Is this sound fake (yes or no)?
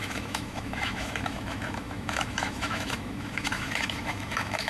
yes